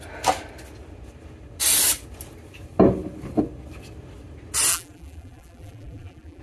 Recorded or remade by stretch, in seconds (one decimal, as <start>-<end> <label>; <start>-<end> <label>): 0.0-4.7 recorded; 4.7-6.4 remade